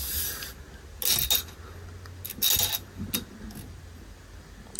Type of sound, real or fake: real